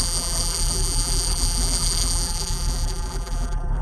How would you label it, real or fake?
fake